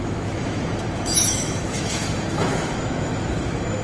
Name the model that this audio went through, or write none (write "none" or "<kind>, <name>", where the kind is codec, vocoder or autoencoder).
autoencoder, DAC-VAE